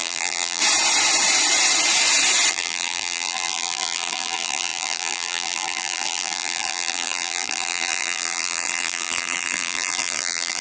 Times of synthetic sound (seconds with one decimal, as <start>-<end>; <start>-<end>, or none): 0.0-0.6; 2.5-10.6